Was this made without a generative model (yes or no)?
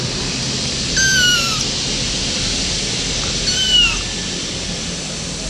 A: yes